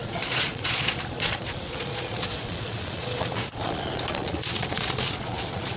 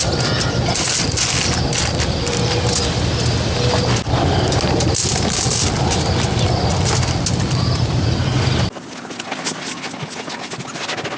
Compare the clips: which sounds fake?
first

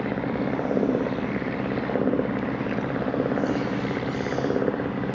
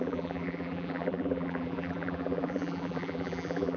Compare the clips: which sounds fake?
second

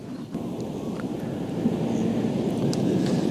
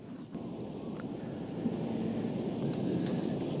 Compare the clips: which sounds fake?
first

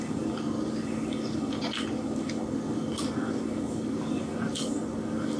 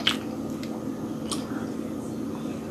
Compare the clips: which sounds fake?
first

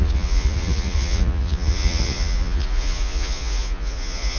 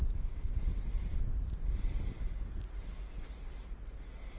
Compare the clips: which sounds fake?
first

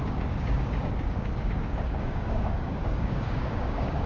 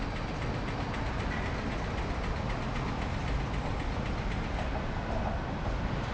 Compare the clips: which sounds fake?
first